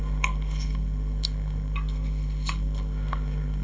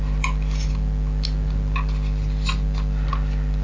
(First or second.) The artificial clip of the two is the first